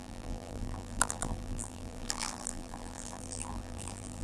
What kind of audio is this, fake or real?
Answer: fake